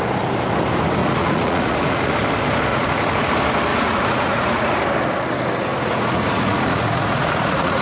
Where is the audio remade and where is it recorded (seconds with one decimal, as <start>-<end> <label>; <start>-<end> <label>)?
0.0-1.0 recorded; 1.0-2.1 remade; 2.1-2.7 recorded; 2.7-3.3 remade; 3.3-3.7 recorded; 3.7-4.8 remade; 4.8-5.7 recorded; 5.7-7.8 remade

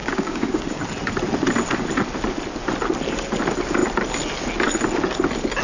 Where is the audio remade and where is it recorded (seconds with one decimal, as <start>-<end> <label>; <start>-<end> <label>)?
0.0-0.8 remade; 0.8-5.6 recorded

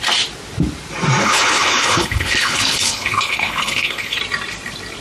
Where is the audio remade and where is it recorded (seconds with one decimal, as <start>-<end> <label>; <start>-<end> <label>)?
0.0-1.2 recorded; 1.2-4.2 remade; 4.2-5.0 recorded

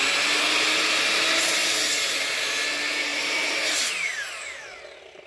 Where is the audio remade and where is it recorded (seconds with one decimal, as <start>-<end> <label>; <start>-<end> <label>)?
0.0-3.1 recorded; 3.1-3.9 remade; 3.9-5.3 recorded

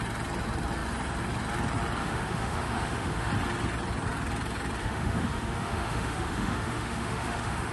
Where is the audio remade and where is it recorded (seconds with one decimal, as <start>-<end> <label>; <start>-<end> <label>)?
0.0-2.0 recorded; 2.0-3.3 remade; 3.3-4.8 recorded; 4.8-7.7 remade

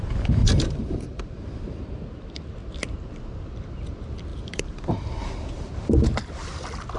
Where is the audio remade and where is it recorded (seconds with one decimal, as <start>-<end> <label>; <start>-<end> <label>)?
0.0-0.4 recorded; 0.4-1.2 remade; 1.2-4.3 recorded; 4.3-5.7 remade; 5.7-7.0 recorded